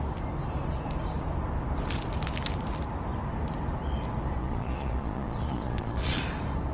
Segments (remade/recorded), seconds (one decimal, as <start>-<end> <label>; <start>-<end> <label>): 0.0-4.4 recorded; 4.4-6.2 remade; 6.2-6.7 recorded